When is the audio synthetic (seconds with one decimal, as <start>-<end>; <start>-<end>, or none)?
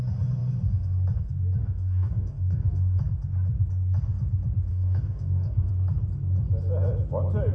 1.6-3.0; 4.7-5.7